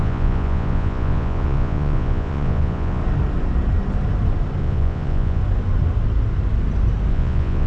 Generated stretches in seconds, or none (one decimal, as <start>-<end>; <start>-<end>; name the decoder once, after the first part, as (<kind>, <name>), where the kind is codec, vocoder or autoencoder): 0.0-3.0 (vocoder, Vocos); 4.6-5.4; 7.1-7.7